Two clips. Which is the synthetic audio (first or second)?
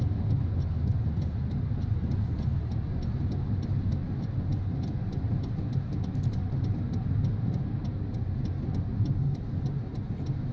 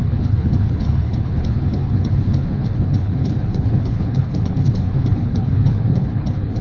second